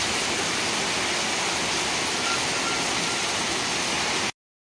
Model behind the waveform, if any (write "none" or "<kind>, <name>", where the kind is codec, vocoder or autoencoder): none